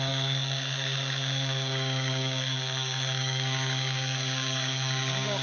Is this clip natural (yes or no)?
no